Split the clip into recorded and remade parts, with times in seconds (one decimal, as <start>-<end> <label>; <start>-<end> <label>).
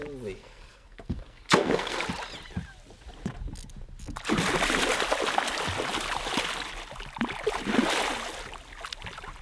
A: 0.0-0.4 recorded; 0.4-2.0 remade; 2.0-9.4 recorded